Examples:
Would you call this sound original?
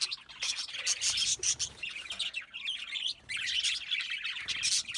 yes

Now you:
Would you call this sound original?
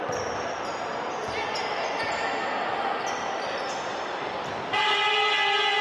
yes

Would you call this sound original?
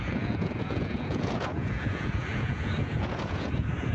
no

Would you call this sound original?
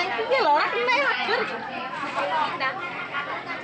yes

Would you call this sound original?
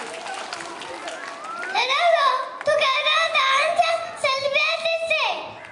yes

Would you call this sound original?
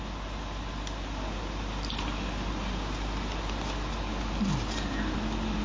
yes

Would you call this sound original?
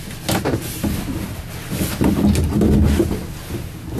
yes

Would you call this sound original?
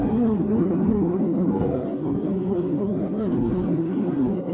no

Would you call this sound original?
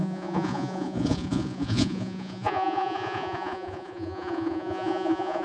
no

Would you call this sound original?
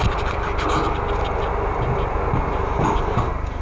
yes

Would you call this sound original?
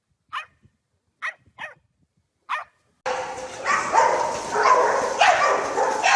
yes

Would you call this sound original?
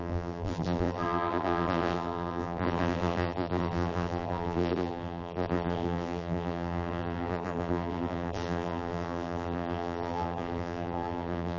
no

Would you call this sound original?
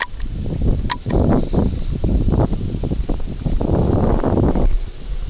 yes